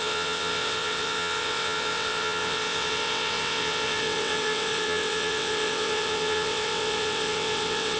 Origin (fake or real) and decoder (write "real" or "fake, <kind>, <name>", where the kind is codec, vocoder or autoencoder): fake, vocoder, WaveNeXt